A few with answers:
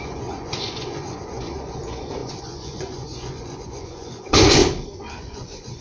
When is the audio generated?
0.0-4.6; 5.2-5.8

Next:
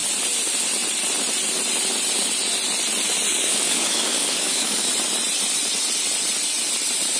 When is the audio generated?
3.3-4.9

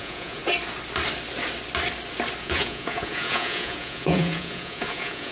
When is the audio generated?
0.0-0.4; 2.4-5.3

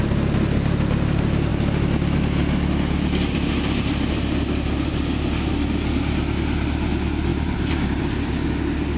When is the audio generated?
7.3-8.0

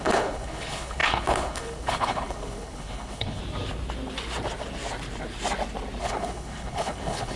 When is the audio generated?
0.0-3.4; 6.0-7.4

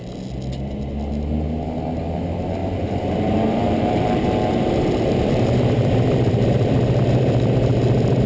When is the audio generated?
2.6-7.0

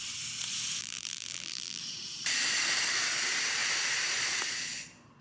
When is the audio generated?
0.8-1.8